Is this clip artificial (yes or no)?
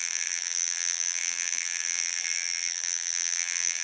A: yes